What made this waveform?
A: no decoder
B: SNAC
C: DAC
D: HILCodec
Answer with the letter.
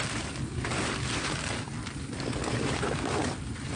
A